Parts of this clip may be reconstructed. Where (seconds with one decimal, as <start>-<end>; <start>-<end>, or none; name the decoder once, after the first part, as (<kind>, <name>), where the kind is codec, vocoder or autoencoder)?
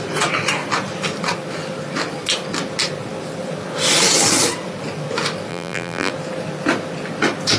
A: 5.5-6.1 (vocoder, BigVGAN v2)